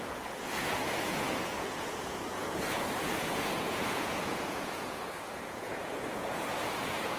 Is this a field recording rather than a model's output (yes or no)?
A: no